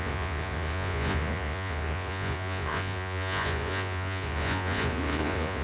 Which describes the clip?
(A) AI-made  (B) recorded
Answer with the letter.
A